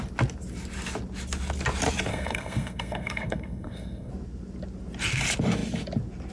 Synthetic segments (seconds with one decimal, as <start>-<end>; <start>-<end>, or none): 2.1-4.1

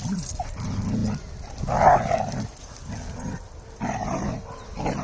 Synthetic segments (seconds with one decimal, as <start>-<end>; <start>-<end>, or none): none